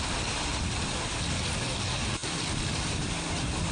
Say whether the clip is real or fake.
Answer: real